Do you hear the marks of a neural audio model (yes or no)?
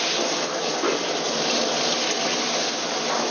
no